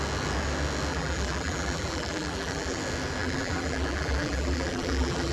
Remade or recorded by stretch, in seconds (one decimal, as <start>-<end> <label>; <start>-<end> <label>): 0.0-0.9 recorded; 0.9-2.8 remade; 2.8-3.2 recorded; 3.2-5.3 remade